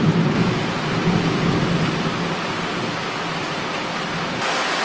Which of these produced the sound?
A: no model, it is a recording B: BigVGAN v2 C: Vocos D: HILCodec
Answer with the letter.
A